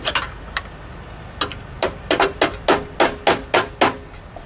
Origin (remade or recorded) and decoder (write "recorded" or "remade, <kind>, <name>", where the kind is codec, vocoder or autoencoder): recorded